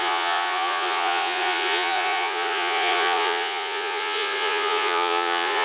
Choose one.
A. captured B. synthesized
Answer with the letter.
B